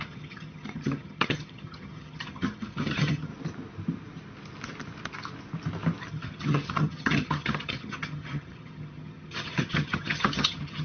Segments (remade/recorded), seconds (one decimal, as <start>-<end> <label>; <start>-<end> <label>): 0.0-3.3 remade; 3.3-6.1 recorded; 6.1-10.8 remade